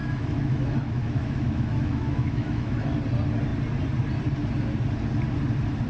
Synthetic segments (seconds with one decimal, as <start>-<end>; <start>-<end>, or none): 0.0-3.0